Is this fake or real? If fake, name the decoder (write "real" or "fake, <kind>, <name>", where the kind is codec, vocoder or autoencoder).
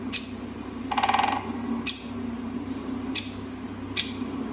real